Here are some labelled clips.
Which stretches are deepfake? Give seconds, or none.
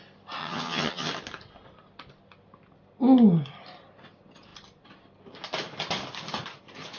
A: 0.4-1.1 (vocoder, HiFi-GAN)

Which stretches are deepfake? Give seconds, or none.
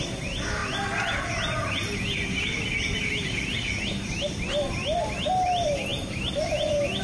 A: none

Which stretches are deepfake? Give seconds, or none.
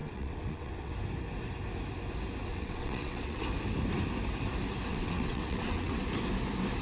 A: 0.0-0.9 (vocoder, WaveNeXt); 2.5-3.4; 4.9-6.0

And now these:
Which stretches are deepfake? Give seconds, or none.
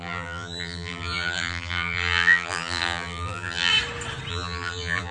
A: 0.0-3.7 (vocoder, BigVGAN v2); 4.3-5.1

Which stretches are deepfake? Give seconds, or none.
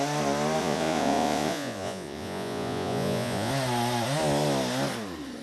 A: 0.6-3.5 (vocoder, Vocos)